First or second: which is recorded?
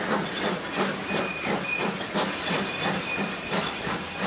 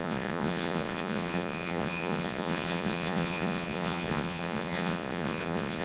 first